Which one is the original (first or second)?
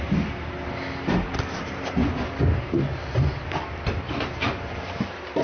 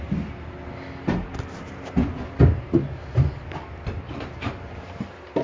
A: second